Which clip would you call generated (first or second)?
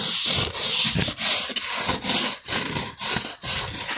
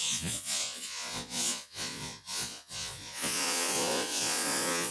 second